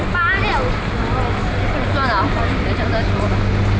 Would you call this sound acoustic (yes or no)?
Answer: yes